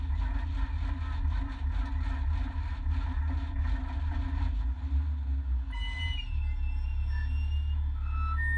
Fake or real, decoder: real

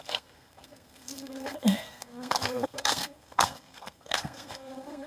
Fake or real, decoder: fake, codec, SNAC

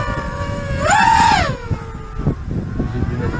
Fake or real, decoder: real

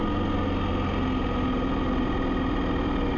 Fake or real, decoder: real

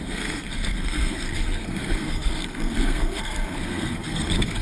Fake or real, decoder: fake, codec, SNAC